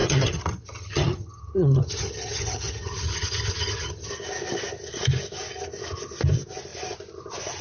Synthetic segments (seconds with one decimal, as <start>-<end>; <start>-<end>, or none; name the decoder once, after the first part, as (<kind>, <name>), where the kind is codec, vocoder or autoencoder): 0.0-4.1 (vocoder, HiFi-GAN)